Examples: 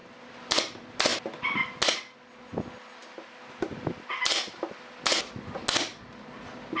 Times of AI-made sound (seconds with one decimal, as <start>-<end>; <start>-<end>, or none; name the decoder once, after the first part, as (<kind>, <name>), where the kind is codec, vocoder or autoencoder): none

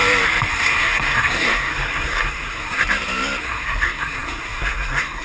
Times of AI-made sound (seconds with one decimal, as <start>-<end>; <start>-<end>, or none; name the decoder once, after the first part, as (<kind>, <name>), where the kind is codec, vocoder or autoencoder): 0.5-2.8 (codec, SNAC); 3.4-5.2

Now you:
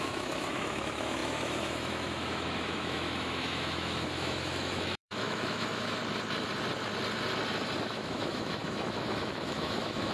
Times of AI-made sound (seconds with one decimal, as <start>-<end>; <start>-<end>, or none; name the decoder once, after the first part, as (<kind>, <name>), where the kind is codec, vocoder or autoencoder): 0.0-6.0 (autoencoder, DAC-VAE); 7.8-10.1